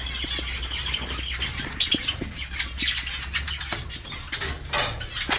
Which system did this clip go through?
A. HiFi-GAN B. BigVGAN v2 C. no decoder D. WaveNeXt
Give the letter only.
C